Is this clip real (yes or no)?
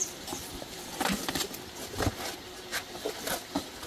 yes